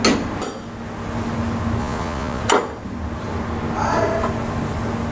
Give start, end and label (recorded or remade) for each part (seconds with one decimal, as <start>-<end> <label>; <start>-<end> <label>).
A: 0.0-1.8 recorded; 1.8-2.4 remade; 2.4-5.1 recorded